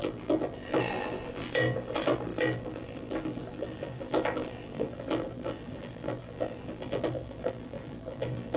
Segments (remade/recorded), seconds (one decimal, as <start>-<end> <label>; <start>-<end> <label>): 0.0-8.6 remade